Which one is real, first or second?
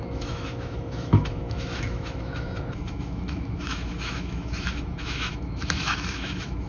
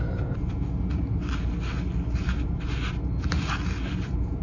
second